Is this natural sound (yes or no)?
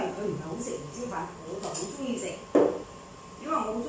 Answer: yes